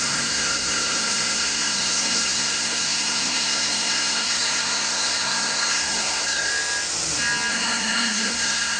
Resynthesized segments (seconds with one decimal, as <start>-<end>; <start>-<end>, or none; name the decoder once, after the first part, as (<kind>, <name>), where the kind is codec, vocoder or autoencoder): 0.0-6.5 (codec, SNAC); 7.5-8.8